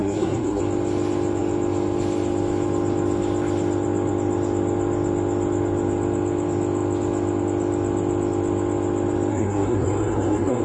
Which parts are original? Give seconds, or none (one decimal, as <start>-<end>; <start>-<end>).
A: 0.6-9.3